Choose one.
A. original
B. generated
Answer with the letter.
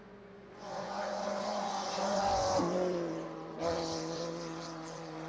B